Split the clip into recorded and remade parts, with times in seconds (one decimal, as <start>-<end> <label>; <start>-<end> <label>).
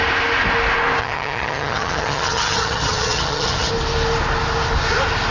0.0-1.0 recorded; 1.0-3.7 remade; 3.7-5.3 recorded